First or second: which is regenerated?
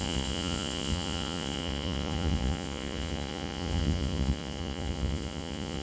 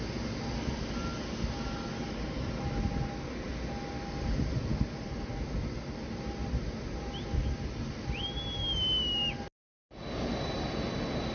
first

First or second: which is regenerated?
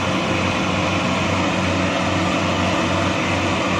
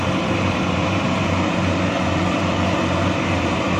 second